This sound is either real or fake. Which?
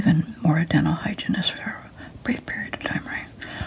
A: real